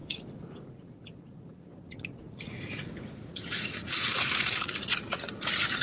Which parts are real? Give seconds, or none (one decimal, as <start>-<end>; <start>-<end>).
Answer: none